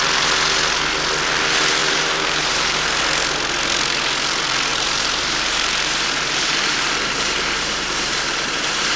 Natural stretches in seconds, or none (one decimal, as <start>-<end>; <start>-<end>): 0.0-1.8; 3.0-4.7